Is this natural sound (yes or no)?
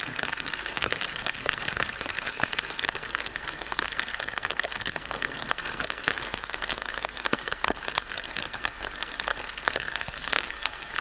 no